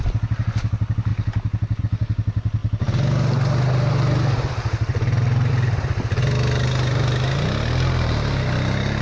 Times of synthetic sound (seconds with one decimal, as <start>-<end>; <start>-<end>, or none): none